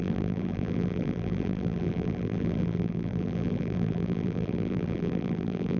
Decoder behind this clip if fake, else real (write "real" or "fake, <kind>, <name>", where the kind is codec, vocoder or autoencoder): fake, vocoder, BigVGAN v2